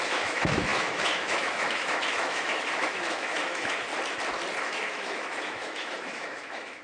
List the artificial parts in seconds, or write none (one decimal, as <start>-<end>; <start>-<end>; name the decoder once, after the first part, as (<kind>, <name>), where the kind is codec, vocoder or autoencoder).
0.0-3.9 (autoencoder, DAC-VAE); 4.6-6.8